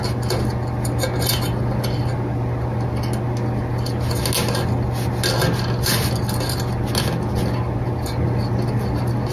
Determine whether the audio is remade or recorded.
recorded